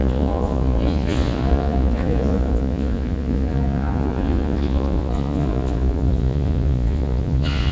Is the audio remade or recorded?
remade